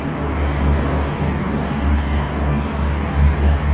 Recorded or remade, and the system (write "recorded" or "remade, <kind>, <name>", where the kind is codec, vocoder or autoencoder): remade, codec, DAC